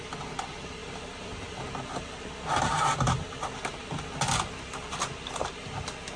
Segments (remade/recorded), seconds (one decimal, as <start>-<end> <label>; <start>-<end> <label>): 0.0-6.2 recorded